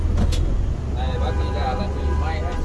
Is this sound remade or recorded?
recorded